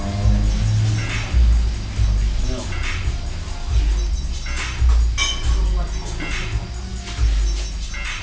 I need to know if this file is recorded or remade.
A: recorded